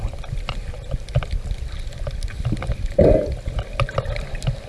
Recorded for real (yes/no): yes